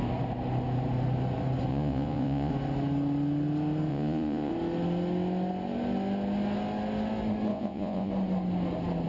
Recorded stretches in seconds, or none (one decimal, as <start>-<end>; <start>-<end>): 0.0-1.7; 2.5-3.9; 4.5-7.5; 8.1-9.1